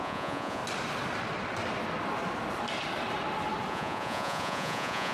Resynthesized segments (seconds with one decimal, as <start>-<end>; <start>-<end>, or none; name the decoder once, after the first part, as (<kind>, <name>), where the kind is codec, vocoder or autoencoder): 0.0-0.6 (vocoder, Vocos); 3.7-5.1